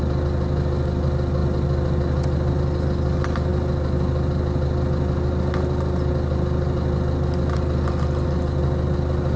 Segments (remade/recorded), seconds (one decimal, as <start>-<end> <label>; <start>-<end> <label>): 0.0-9.4 recorded